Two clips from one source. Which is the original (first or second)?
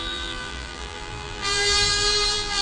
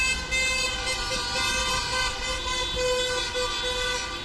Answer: second